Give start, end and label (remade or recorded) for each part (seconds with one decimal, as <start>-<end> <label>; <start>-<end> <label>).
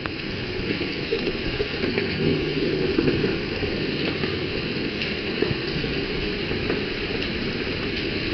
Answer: 0.0-6.3 remade; 6.3-7.9 recorded; 7.9-8.3 remade